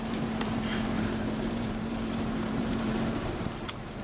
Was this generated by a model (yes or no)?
yes